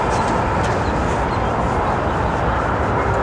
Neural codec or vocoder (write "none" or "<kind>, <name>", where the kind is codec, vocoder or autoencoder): none